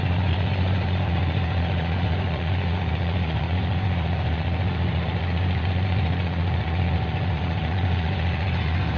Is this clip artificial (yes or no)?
yes